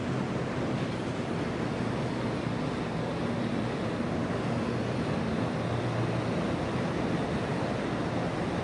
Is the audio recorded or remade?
recorded